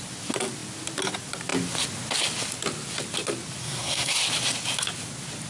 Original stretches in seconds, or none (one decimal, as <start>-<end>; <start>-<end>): 0.0-3.6; 4.2-5.5